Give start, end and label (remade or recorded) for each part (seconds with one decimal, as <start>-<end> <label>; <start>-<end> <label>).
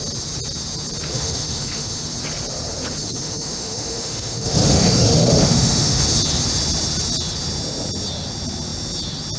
0.0-1.1 recorded; 1.1-2.0 remade; 2.0-3.0 recorded; 3.0-6.0 remade; 6.0-9.4 recorded